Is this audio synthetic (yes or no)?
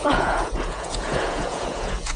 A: yes